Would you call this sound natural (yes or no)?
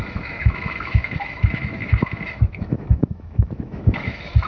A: no